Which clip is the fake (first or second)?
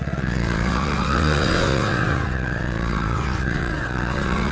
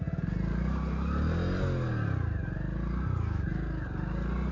first